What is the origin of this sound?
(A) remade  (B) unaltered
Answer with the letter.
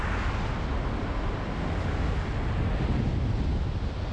B